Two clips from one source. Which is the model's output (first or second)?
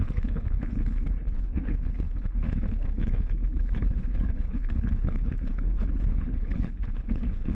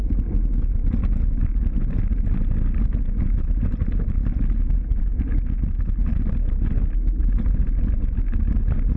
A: first